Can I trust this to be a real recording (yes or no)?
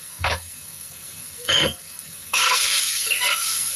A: no